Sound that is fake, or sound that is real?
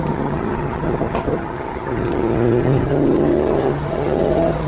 fake